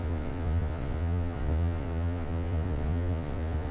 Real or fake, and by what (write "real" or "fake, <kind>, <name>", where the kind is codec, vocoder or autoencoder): fake, vocoder, Vocos